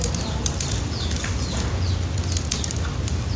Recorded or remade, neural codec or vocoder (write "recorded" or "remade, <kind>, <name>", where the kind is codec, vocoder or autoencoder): recorded